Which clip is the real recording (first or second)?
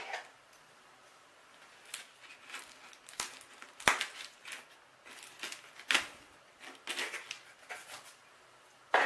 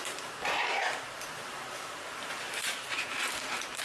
first